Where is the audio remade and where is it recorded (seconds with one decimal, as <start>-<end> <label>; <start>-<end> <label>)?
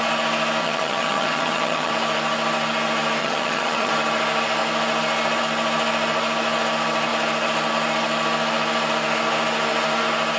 0.0-0.6 recorded; 0.6-1.9 remade; 1.9-3.2 recorded; 3.2-3.9 remade; 3.9-10.4 recorded